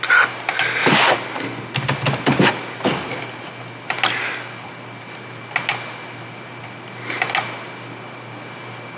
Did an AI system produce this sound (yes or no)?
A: no